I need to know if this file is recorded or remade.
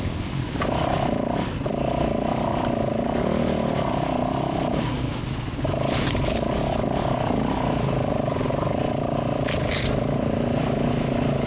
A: recorded